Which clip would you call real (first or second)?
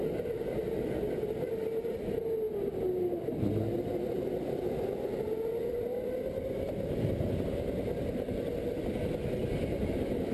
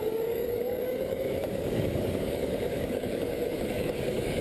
first